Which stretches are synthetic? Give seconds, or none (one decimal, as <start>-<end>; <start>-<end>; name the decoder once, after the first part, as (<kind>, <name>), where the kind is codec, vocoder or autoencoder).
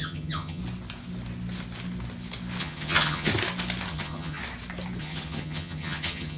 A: 0.0-0.6 (vocoder, HiFi-GAN); 2.6-3.3; 3.9-4.4; 5.0-6.4